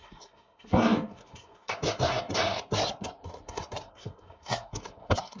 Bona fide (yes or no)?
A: no